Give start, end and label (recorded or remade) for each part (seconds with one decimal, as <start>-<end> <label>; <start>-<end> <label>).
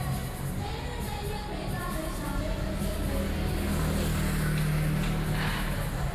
0.0-6.1 recorded